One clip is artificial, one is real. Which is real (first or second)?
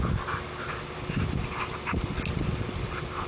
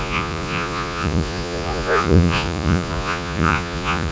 first